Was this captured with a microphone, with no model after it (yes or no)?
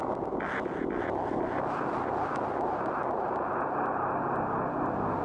yes